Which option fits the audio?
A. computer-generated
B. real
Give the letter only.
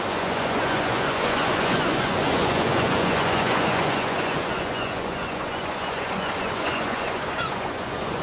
A